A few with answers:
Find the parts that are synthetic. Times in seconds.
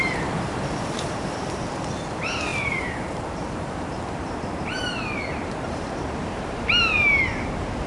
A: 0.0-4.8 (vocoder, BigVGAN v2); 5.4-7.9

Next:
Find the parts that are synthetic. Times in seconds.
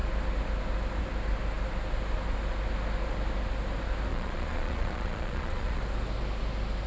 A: 4.1-5.8 (vocoder, Vocos)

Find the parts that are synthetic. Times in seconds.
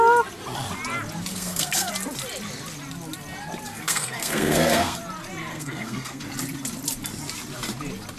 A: 1.3-1.9 (codec, SNAC); 3.7-5.0; 5.5-6.2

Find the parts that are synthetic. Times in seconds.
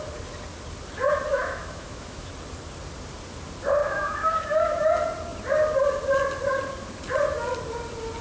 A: 1.3-2.3 (autoencoder, DAC-VAE); 3.8-4.8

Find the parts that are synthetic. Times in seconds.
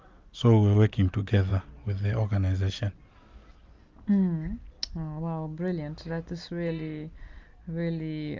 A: none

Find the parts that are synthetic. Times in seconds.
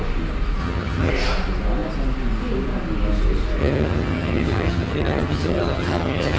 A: 0.6-1.1 (vocoder, HiFi-GAN); 3.6-6.4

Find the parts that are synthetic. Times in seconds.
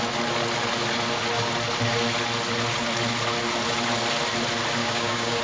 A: 4.8-5.4 (codec, DAC)